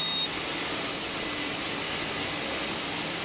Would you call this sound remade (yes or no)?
no